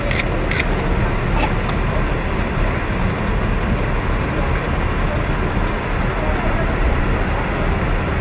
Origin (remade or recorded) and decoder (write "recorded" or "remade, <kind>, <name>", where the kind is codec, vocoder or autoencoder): recorded